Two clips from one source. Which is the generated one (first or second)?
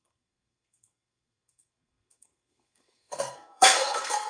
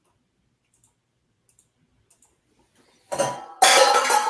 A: first